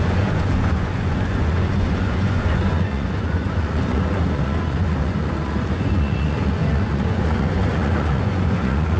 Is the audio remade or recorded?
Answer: remade